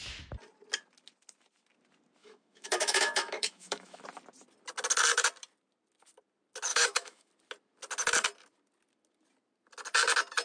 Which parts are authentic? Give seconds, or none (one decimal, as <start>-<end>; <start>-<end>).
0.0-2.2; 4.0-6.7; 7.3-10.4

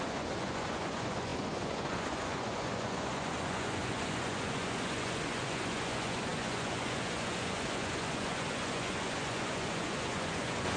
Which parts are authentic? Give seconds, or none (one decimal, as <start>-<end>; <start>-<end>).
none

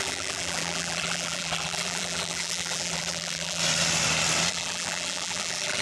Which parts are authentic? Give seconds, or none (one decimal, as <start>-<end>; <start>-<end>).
3.6-4.5

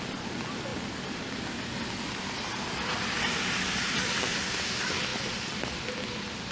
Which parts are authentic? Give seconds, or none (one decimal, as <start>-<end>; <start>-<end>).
0.0-6.5

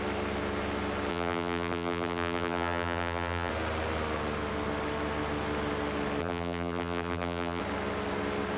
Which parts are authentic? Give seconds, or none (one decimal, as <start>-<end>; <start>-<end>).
0.0-1.1; 3.5-6.2; 7.6-8.6